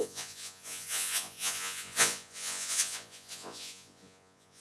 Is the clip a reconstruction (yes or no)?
yes